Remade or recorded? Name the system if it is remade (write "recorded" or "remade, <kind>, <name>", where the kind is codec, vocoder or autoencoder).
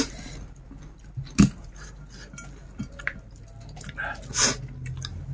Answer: recorded